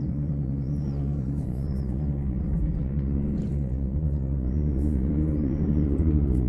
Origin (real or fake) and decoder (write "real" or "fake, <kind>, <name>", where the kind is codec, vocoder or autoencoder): fake, vocoder, Vocos